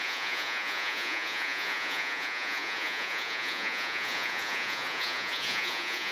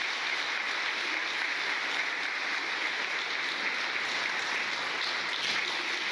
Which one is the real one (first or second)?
second